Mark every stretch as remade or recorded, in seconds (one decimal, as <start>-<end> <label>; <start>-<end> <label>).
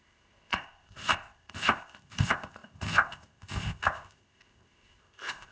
0.0-5.5 remade